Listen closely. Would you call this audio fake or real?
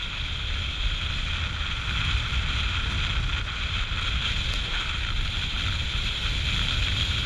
real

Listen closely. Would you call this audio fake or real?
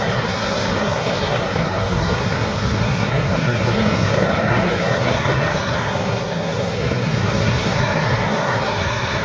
fake